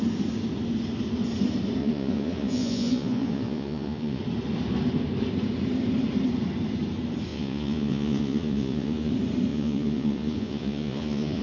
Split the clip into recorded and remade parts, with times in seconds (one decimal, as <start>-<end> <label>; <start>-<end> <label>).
0.0-1.8 recorded; 1.8-4.2 remade; 4.2-7.3 recorded; 7.3-9.1 remade; 9.1-9.5 recorded; 9.5-11.4 remade